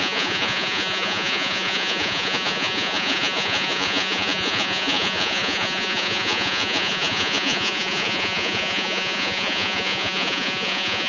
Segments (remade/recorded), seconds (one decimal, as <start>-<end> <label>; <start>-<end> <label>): 0.0-11.1 remade

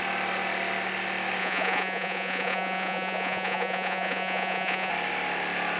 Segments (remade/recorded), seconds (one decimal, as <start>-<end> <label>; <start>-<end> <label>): 0.0-1.4 recorded; 1.4-4.9 remade; 4.9-5.8 recorded

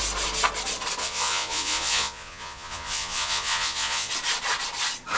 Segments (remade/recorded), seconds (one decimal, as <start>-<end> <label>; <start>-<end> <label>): 0.0-1.0 recorded; 1.0-4.1 remade; 4.1-5.2 recorded